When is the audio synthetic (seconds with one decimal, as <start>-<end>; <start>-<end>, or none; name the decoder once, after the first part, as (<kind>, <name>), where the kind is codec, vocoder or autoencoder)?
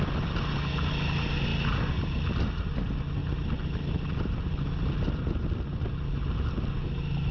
none